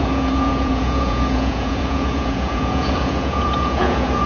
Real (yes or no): no